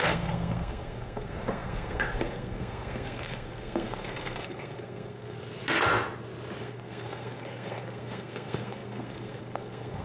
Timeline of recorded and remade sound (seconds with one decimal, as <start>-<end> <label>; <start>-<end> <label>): 0.0-5.6 remade; 5.6-6.6 recorded; 6.6-10.0 remade

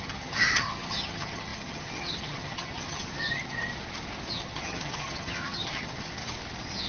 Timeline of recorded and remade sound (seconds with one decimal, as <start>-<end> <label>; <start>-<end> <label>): 0.0-3.7 remade; 3.7-4.3 recorded; 4.3-6.2 remade; 6.2-6.9 recorded

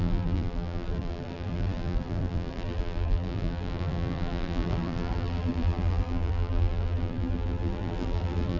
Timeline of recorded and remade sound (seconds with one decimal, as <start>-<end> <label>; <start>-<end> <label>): 0.0-8.6 remade

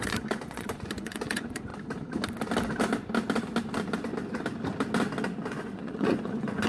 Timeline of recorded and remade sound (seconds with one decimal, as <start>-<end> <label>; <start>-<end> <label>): 0.0-1.7 remade; 1.7-5.5 recorded; 5.5-6.7 remade